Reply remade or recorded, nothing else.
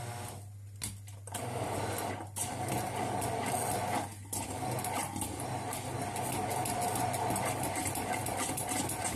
recorded